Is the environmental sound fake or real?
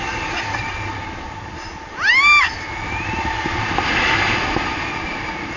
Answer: real